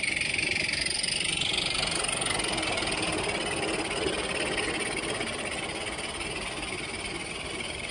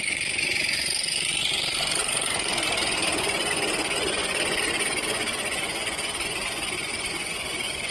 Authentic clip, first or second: first